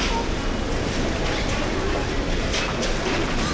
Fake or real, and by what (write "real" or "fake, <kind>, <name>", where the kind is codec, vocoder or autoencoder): real